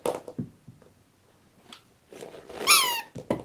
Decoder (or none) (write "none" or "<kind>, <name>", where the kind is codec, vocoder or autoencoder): none